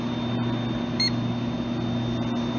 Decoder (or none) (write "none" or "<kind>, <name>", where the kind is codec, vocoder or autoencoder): none